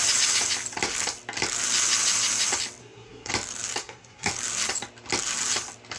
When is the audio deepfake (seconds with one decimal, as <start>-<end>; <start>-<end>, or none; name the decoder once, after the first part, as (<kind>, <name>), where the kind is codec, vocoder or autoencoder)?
2.8-3.3 (codec, SNAC); 3.8-4.3

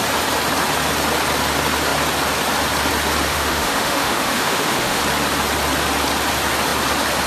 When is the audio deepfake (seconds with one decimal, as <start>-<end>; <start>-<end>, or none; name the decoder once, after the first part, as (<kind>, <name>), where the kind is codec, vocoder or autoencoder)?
3.3-5.0 (autoencoder, DAC-VAE)

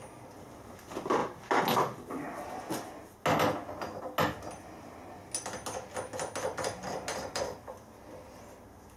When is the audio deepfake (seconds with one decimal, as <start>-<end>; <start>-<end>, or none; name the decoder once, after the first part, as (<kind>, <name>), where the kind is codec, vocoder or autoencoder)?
7.1-8.0 (vocoder, BigVGAN v2)